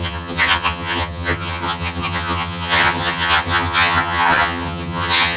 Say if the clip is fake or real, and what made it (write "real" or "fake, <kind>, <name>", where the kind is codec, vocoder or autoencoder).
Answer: fake, vocoder, HiFi-GAN